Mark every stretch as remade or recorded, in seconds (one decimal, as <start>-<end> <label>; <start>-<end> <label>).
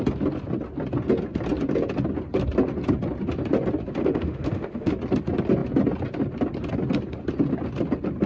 0.0-4.0 recorded; 4.0-4.9 remade; 4.9-8.3 recorded